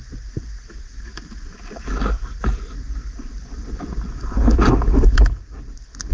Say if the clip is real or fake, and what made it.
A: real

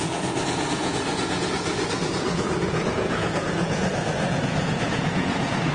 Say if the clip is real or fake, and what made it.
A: fake, vocoder, Vocos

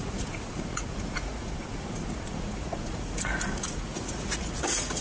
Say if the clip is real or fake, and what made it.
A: fake, vocoder, Vocos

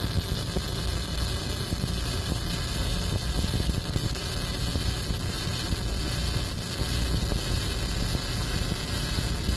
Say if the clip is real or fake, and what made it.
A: real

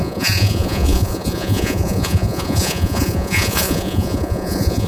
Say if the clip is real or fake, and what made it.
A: fake, vocoder, Vocos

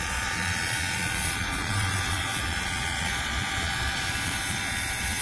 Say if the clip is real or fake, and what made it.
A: fake, vocoder, Vocos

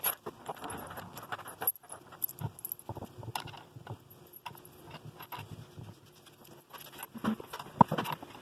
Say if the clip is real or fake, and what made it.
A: real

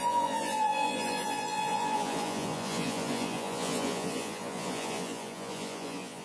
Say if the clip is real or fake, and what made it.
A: fake, vocoder, Vocos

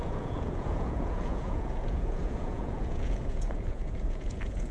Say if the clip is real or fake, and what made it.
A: fake, vocoder, Vocos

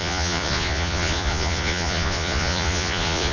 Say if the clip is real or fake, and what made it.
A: fake, vocoder, Vocos